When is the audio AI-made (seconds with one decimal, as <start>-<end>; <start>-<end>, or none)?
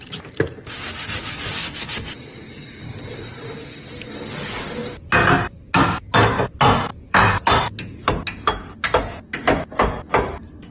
6.9-7.6